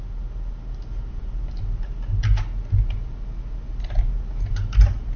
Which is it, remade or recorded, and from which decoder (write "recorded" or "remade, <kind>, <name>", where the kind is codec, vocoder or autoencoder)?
recorded